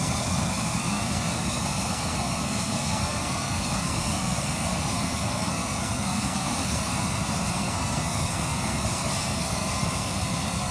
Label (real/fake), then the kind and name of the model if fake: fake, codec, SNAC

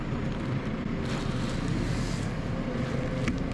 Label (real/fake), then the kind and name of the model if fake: real